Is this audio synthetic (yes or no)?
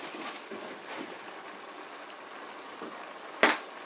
no